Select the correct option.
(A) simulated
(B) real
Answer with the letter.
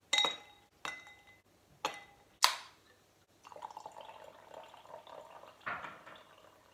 B